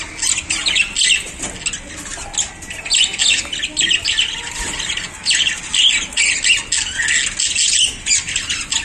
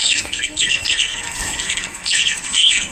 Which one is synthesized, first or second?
second